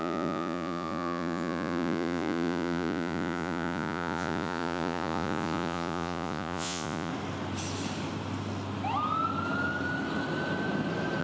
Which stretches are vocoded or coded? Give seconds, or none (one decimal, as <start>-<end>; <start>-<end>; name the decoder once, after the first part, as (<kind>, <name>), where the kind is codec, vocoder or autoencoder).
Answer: 0.0-7.1 (vocoder, Vocos)

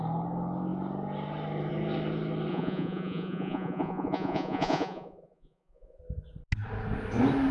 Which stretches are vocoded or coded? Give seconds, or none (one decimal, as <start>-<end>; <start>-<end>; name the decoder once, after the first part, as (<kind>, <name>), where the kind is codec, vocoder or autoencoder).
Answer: 2.5-6.0 (vocoder, Vocos)

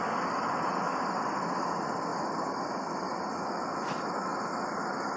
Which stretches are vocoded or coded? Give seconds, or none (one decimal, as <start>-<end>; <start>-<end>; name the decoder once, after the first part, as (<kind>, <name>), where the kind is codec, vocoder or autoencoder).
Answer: none